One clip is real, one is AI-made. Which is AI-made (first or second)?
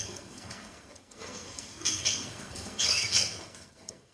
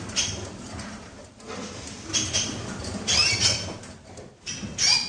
first